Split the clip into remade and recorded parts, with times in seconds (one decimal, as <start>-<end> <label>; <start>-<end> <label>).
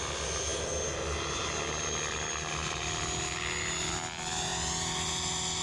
0.0-5.6 recorded